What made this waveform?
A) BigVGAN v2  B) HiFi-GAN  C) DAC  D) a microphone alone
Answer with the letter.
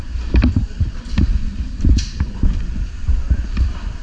A